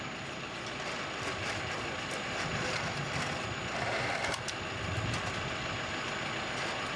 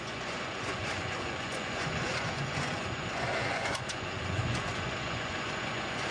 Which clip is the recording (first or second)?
first